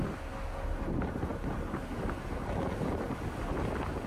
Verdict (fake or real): real